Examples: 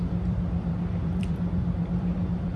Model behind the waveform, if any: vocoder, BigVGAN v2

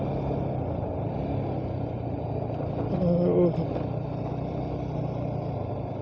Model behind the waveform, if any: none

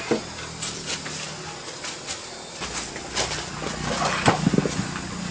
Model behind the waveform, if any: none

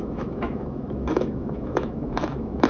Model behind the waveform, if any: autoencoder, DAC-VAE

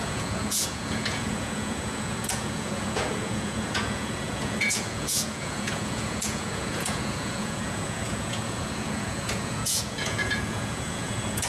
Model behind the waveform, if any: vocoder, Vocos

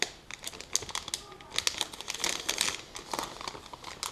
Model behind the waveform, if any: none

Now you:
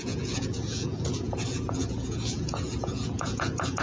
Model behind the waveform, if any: vocoder, Vocos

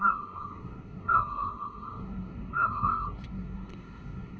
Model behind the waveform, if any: codec, SNAC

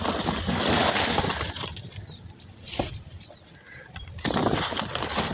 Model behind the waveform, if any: none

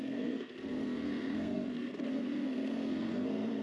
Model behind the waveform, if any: codec, SNAC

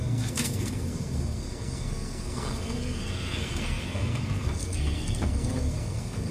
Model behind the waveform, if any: codec, SNAC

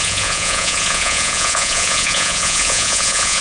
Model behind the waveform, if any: vocoder, Vocos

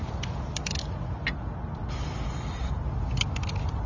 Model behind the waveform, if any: none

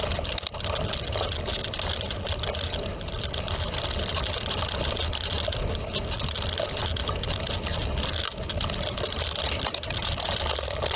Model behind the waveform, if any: none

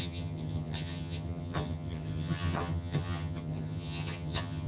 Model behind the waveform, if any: vocoder, HiFi-GAN